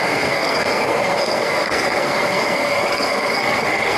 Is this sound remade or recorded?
remade